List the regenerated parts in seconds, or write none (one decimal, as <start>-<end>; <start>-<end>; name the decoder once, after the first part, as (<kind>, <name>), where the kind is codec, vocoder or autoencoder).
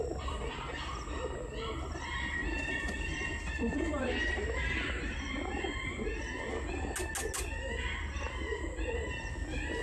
2.4-4.3 (vocoder, BigVGAN v2)